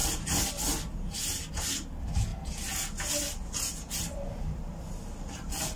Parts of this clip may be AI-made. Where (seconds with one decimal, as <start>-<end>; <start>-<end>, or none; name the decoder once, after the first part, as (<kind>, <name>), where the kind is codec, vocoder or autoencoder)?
1.6-2.3 (vocoder, BigVGAN v2); 3.9-5.8

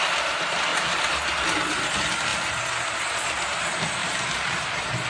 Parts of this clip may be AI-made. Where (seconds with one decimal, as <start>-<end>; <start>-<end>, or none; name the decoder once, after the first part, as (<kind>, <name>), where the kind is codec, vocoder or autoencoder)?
4.0-5.1 (vocoder, BigVGAN v2)

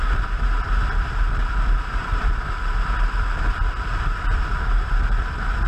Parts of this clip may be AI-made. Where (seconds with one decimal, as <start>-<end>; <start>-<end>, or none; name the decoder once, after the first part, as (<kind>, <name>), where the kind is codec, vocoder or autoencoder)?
0.0-5.7 (vocoder, BigVGAN v2)

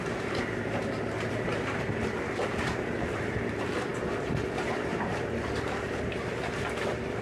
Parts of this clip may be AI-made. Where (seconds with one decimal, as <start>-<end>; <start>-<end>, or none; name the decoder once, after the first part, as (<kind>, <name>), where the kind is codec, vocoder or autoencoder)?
0.0-7.2 (vocoder, BigVGAN v2)

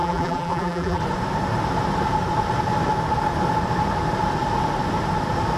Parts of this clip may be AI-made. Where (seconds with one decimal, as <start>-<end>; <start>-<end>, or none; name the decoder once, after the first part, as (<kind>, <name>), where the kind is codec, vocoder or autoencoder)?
0.0-1.0 (vocoder, BigVGAN v2)

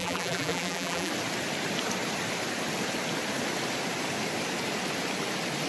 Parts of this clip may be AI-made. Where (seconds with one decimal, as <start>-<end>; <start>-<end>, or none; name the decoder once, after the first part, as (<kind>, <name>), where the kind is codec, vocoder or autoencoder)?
0.0-1.1 (vocoder, BigVGAN v2)

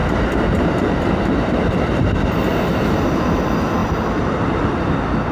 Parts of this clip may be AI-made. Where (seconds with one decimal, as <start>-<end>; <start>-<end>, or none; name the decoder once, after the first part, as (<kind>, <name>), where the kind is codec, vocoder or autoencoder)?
0.0-3.2 (vocoder, BigVGAN v2); 3.8-4.6